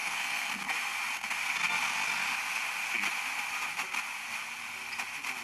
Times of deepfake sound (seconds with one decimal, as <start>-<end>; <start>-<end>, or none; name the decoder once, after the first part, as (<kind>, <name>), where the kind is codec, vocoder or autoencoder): 0.0-0.5 (codec, SNAC)